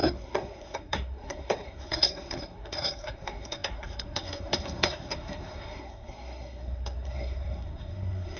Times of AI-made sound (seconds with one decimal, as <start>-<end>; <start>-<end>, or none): 0.0-8.4